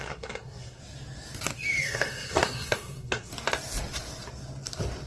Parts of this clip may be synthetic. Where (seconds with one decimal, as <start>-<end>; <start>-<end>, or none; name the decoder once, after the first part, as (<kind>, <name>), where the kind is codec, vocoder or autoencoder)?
0.0-0.8 (codec, SNAC); 1.8-3.3